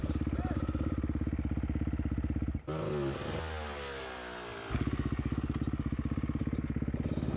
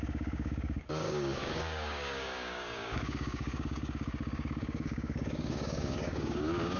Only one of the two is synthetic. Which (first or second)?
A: second